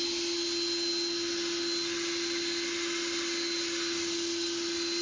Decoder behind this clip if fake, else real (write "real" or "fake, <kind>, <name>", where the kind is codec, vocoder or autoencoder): real